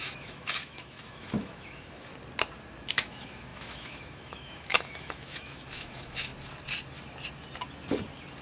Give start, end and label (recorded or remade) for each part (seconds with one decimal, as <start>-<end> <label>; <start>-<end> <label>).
0.0-2.1 remade; 2.1-2.9 recorded; 2.9-6.3 remade; 6.3-8.4 recorded